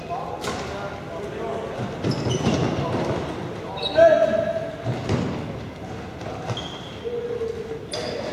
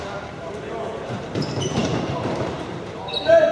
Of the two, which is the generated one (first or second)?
second